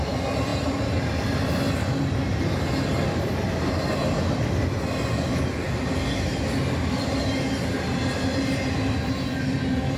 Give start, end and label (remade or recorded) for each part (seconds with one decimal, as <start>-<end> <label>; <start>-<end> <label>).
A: 0.0-10.0 recorded